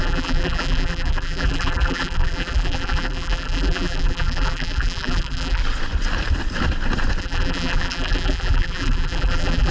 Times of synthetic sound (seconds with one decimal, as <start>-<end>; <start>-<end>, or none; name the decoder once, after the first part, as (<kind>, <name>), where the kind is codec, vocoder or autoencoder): 0.0-5.6 (vocoder, BigVGAN v2); 7.2-9.7